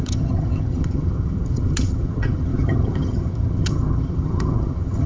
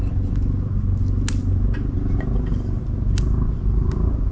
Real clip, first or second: second